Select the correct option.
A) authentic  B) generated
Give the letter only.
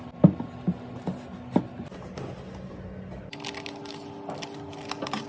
A